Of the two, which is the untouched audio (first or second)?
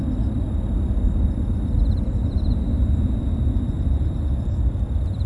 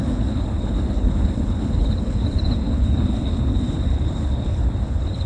first